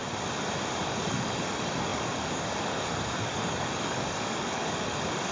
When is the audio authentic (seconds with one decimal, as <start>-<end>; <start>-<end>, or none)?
0.0-0.8